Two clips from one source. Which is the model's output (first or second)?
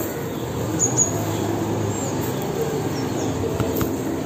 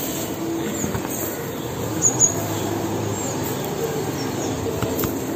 second